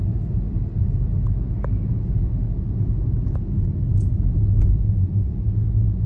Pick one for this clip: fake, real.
real